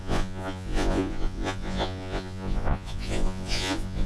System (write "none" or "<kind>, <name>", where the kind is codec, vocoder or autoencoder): vocoder, Vocos